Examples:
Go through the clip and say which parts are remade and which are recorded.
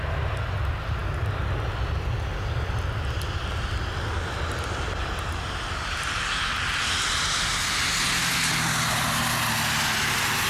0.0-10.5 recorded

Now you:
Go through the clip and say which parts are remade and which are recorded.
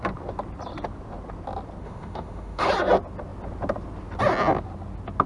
0.0-1.8 recorded; 1.8-2.7 remade; 2.7-5.3 recorded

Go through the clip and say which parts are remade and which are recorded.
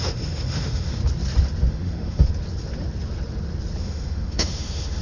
0.0-1.0 remade; 1.0-1.7 recorded; 1.7-2.3 remade; 2.3-3.8 recorded; 3.8-5.0 remade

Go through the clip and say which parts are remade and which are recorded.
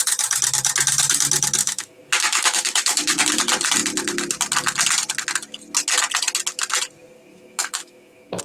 0.0-1.6 recorded; 1.6-3.2 remade; 3.2-7.3 recorded; 7.3-8.4 remade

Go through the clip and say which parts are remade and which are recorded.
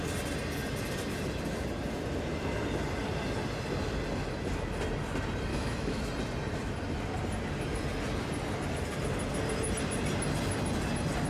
0.0-5.5 recorded; 5.5-6.0 remade; 6.0-11.3 recorded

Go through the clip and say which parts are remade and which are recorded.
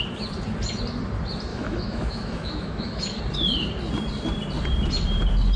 0.0-1.5 recorded; 1.5-3.2 remade; 3.2-5.6 recorded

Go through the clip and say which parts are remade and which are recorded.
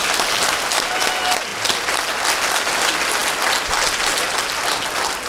0.0-5.3 recorded